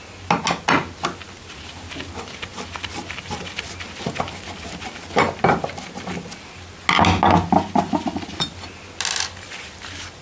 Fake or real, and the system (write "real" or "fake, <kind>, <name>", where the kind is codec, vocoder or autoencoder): real